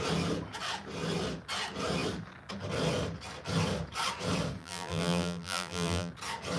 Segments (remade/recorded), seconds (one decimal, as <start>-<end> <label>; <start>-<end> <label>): 0.0-4.6 recorded; 4.6-6.1 remade; 6.1-6.6 recorded